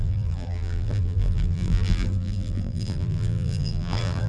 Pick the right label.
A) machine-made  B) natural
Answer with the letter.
A